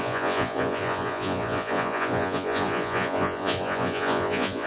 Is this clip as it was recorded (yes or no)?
no